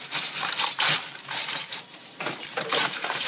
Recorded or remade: remade